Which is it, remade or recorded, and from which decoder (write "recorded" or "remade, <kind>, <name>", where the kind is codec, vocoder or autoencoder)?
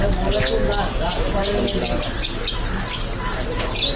recorded